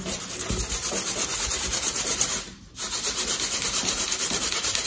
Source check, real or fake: fake